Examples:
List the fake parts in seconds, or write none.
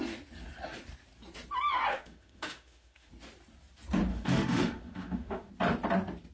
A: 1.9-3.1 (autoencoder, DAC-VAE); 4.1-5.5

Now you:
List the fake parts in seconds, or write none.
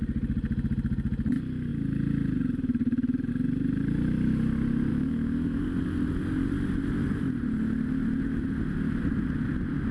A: 4.9-5.6 (autoencoder, DAC-VAE)